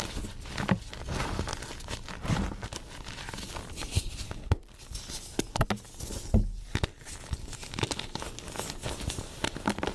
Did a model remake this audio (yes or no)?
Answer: no